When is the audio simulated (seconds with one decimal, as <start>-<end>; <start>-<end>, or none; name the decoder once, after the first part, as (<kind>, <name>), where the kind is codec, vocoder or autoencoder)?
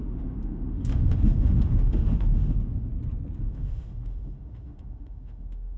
0.0-2.9 (autoencoder, DAC-VAE); 3.4-5.8